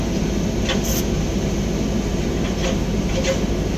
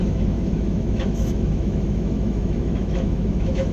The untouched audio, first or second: first